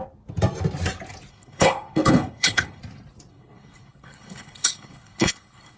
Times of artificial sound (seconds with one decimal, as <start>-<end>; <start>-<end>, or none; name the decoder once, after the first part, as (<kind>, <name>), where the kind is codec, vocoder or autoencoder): 1.3-2.8 (codec, HILCodec); 3.3-5.8